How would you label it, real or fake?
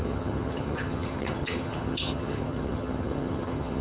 fake